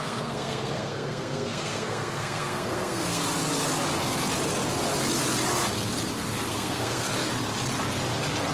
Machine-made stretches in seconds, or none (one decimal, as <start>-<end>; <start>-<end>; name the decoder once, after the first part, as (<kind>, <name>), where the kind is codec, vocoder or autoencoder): 0.0-3.2 (codec, SNAC); 6.5-7.1